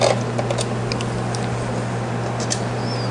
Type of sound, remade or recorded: recorded